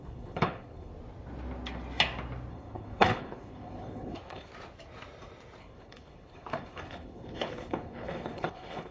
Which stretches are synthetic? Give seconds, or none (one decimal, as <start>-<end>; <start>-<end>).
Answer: 0.0-0.9; 2.5-4.5; 5.6-8.9